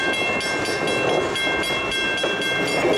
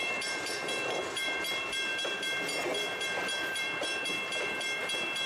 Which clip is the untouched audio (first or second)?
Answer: first